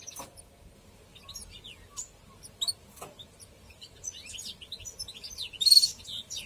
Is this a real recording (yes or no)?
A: yes